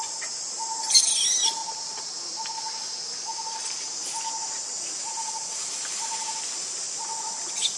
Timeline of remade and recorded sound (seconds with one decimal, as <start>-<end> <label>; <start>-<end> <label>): 0.0-5.1 recorded; 5.1-6.3 remade; 6.3-7.8 recorded